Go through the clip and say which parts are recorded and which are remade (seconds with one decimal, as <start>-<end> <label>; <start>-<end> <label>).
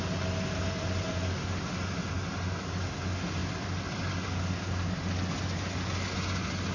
0.0-3.4 recorded; 3.4-4.1 remade; 4.1-6.7 recorded